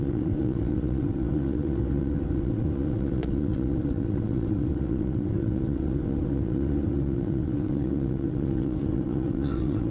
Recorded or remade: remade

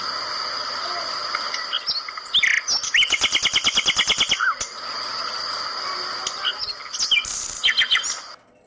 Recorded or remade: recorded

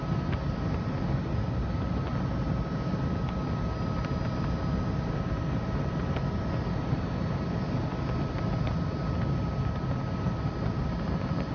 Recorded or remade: recorded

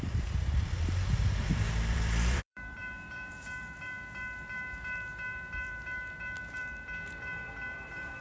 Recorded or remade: remade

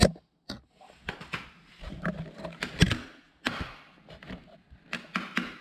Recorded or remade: recorded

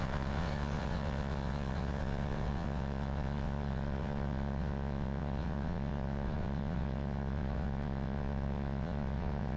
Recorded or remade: remade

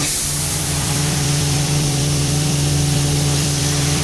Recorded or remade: remade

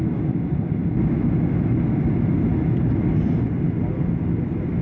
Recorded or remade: recorded